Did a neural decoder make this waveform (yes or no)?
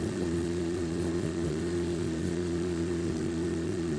yes